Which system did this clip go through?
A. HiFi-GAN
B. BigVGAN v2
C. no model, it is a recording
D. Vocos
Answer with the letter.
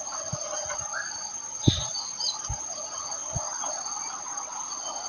C